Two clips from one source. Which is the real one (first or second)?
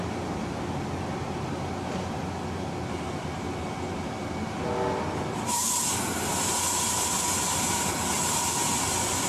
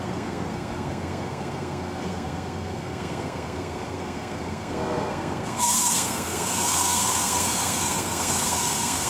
first